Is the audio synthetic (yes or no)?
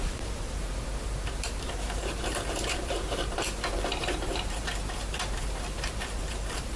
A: yes